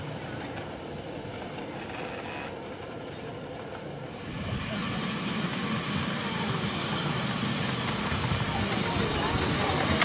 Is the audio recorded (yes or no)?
yes